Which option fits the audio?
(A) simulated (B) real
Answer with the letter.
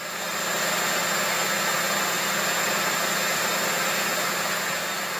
B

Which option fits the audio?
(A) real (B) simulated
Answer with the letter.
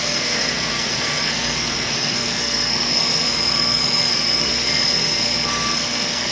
B